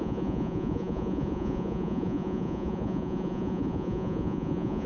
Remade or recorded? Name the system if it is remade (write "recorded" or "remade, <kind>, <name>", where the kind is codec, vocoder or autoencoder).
remade, vocoder, Vocos